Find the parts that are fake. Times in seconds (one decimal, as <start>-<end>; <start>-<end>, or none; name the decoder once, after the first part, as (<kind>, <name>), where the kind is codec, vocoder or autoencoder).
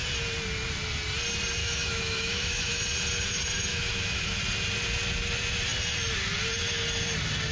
1.6-2.8 (autoencoder, DAC-VAE); 3.7-4.4